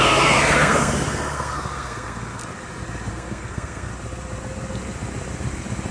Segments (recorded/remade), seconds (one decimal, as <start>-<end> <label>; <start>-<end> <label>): 0.0-2.4 remade; 2.4-3.1 recorded; 3.1-3.9 remade; 3.9-5.9 recorded